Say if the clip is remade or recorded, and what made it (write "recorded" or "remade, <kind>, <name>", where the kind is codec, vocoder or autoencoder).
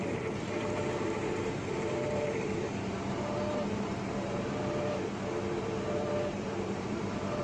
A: remade, vocoder, BigVGAN v2